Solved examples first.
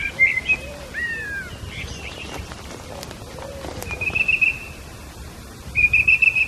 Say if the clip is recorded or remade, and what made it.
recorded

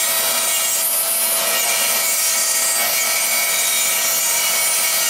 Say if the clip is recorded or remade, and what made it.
recorded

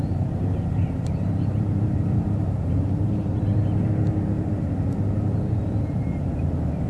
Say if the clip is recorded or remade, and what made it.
remade, vocoder, BigVGAN v2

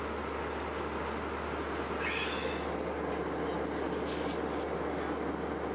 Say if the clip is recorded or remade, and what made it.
recorded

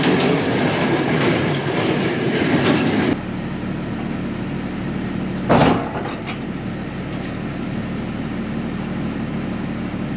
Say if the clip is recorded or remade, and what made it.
recorded